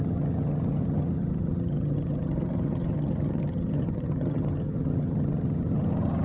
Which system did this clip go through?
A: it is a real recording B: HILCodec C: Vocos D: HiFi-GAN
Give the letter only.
D